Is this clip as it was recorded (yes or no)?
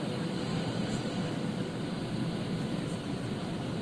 yes